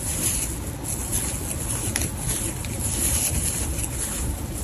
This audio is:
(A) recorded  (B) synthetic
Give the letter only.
A